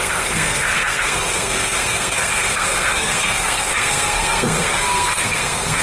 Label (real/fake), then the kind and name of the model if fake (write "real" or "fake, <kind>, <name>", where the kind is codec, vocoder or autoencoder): fake, codec, SNAC